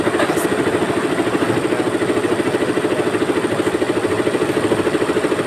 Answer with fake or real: real